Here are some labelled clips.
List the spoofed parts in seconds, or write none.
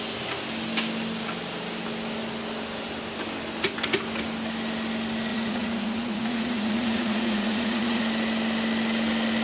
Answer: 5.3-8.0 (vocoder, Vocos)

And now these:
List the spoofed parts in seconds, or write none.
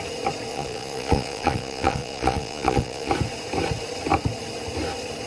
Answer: 0.5-3.1 (vocoder, Vocos)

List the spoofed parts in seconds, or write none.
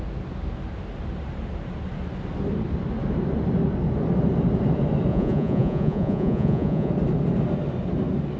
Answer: 5.1-6.9 (vocoder, Vocos)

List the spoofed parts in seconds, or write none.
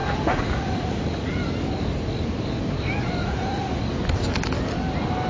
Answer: 0.0-1.4 (vocoder, Vocos); 3.2-3.8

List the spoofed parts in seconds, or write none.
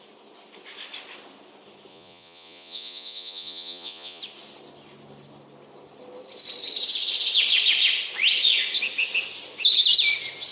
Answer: 1.9-4.2 (vocoder, Vocos)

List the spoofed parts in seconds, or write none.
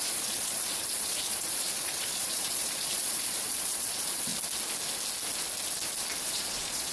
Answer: 0.0-4.3 (vocoder, Vocos); 6.2-6.9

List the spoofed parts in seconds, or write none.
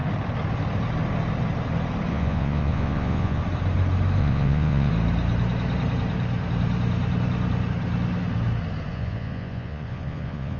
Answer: 2.1-3.4 (vocoder, Vocos); 4.2-4.9; 8.9-10.6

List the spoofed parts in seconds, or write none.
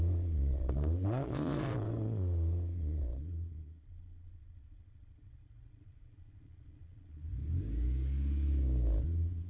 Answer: 0.0-7.3 (vocoder, Vocos); 9.0-9.5